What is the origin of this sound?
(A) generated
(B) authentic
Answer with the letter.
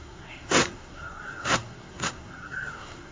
A